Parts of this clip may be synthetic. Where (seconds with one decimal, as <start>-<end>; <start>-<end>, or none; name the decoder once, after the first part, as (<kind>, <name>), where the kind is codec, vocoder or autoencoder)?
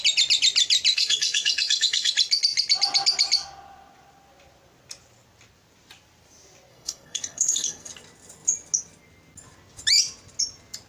0.9-2.1 (codec, SNAC); 6.7-7.9